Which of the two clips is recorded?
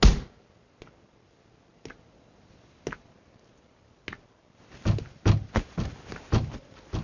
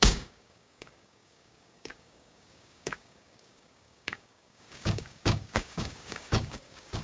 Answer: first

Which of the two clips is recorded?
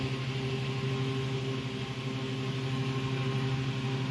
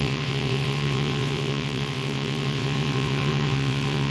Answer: first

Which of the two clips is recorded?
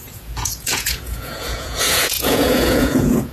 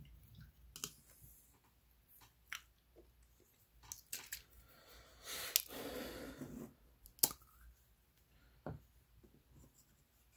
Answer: second